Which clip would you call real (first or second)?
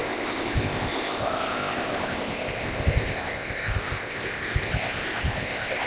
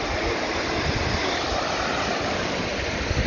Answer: second